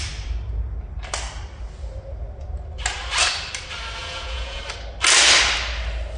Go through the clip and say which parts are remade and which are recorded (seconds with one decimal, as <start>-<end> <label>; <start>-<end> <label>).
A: 0.0-4.0 recorded; 4.0-4.6 remade; 4.6-6.2 recorded

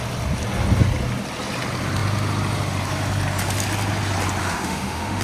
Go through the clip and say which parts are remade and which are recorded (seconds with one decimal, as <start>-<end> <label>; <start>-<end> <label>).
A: 0.0-4.4 recorded; 4.4-5.2 remade

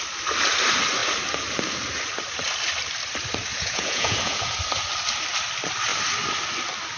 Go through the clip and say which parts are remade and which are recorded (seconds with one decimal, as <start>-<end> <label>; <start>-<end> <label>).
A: 0.0-3.5 recorded; 3.5-4.6 remade; 4.6-7.0 recorded

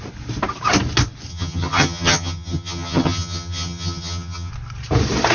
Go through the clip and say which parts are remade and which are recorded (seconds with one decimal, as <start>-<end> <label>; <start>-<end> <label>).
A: 0.0-1.3 recorded; 1.3-4.5 remade; 4.5-5.3 recorded

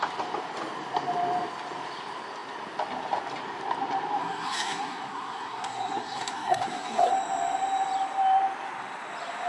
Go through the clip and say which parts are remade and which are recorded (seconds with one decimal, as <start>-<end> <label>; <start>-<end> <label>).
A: 0.0-4.2 recorded; 4.2-7.1 remade; 7.1-9.5 recorded

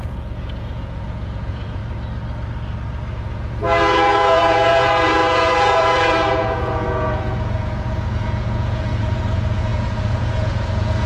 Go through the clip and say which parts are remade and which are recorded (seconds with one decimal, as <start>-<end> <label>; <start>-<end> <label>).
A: 0.0-1.8 remade; 1.8-3.1 recorded; 3.1-11.1 remade